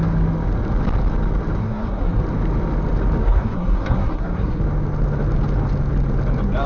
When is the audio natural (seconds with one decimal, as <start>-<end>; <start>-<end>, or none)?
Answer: 0.0-1.6; 2.2-3.2; 4.6-6.7